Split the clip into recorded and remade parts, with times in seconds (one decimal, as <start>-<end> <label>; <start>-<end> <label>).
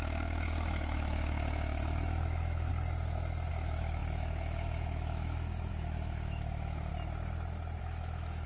0.0-2.7 remade; 2.7-3.5 recorded; 3.5-6.9 remade; 6.9-7.8 recorded; 7.8-8.5 remade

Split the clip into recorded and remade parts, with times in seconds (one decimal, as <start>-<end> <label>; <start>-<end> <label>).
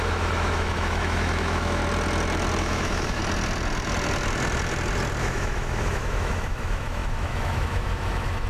0.0-1.8 remade; 1.8-2.6 recorded; 2.6-3.2 remade; 3.2-5.2 recorded; 5.2-8.5 remade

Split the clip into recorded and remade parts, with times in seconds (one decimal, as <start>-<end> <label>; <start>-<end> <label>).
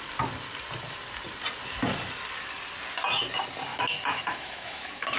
0.0-3.7 recorded; 3.7-5.2 remade